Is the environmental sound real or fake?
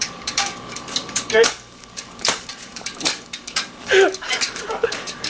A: fake